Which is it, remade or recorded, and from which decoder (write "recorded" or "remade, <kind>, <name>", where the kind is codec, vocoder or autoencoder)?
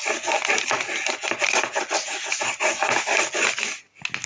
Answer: recorded